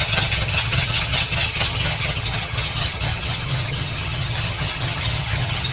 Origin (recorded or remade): remade